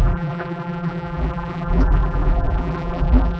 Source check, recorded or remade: remade